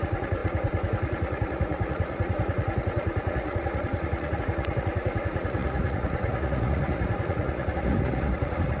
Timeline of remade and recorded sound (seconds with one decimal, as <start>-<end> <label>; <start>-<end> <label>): 0.0-8.8 remade